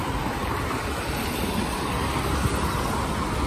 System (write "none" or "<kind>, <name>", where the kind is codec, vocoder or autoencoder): none